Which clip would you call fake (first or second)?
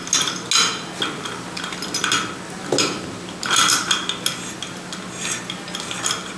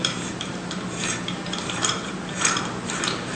second